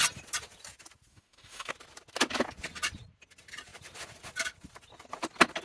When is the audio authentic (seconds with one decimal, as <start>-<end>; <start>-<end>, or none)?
0.0-1.1; 1.7-5.6